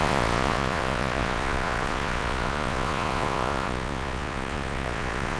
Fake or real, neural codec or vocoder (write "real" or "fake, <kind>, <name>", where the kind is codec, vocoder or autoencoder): fake, vocoder, Vocos